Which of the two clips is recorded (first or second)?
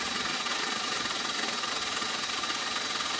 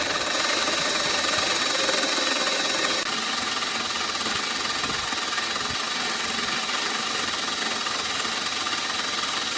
second